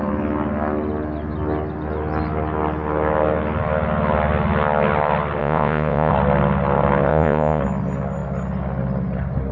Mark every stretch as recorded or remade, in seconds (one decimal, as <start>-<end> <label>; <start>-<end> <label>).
0.0-5.4 recorded; 5.4-6.1 remade; 6.1-7.1 recorded; 7.1-7.6 remade; 7.6-9.5 recorded